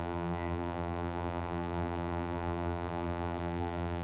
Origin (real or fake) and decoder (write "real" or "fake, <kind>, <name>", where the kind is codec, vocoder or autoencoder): fake, vocoder, BigVGAN v2